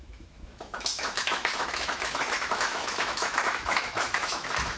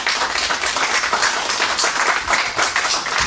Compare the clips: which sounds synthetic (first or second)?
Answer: first